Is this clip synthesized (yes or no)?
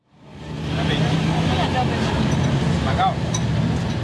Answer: no